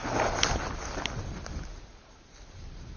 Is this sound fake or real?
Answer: real